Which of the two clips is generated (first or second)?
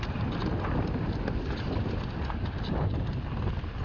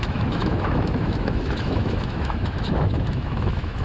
second